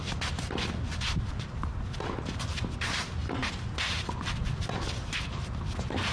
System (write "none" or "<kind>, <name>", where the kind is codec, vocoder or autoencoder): none